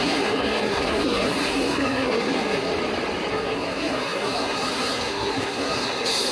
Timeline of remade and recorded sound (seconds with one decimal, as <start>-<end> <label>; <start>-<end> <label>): 0.0-2.7 remade; 2.7-3.3 recorded; 3.3-6.3 remade